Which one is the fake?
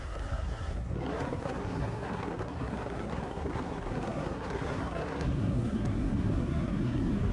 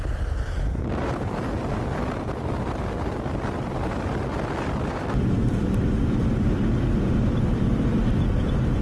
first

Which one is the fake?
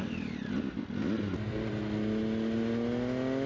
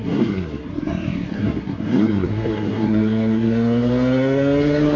second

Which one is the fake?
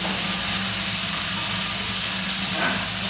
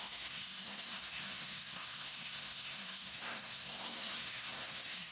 second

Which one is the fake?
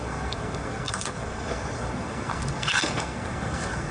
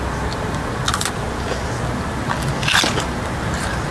first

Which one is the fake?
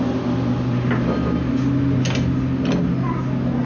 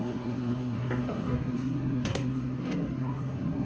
second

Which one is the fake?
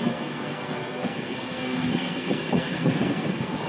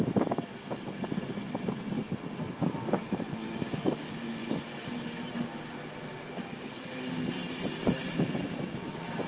first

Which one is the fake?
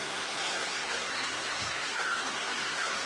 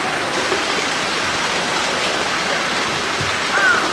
first